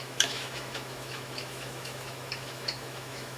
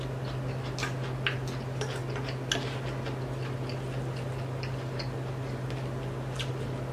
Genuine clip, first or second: second